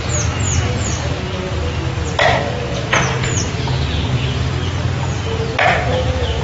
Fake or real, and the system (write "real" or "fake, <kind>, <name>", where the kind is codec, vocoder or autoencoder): real